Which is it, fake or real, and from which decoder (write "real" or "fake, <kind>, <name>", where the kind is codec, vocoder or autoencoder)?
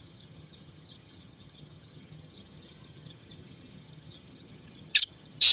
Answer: fake, vocoder, HiFi-GAN